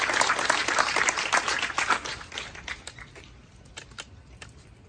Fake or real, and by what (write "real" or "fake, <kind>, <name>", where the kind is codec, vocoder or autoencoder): real